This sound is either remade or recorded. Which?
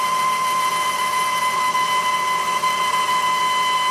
recorded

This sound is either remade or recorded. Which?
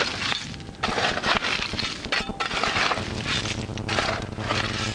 recorded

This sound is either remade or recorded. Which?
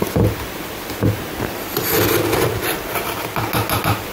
recorded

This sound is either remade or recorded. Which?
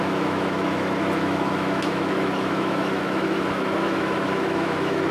remade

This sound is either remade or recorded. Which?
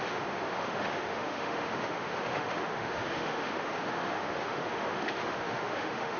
remade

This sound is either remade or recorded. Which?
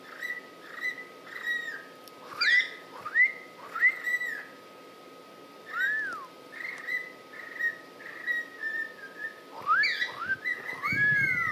recorded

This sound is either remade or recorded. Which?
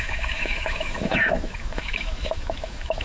remade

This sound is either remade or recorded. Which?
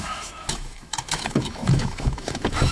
remade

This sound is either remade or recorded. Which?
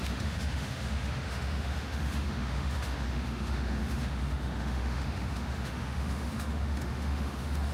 remade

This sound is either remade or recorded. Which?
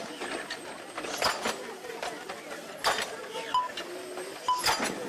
recorded